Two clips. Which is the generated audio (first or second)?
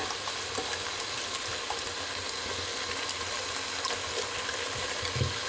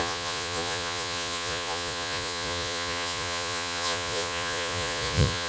second